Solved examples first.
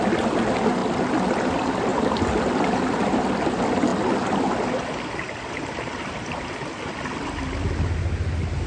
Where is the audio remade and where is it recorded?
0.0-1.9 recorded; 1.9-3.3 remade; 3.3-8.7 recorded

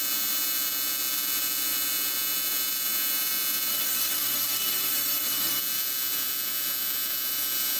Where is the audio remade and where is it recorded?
0.0-3.7 recorded; 3.7-5.6 remade; 5.6-7.8 recorded

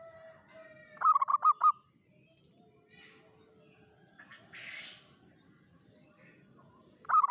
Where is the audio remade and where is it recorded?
0.0-7.3 recorded